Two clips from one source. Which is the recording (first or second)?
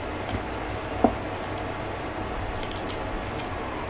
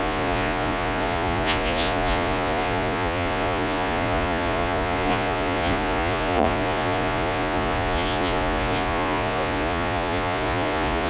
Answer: first